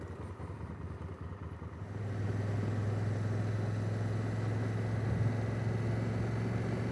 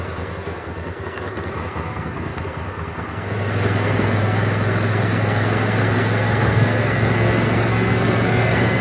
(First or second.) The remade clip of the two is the second